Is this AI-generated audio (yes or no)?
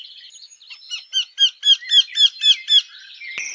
no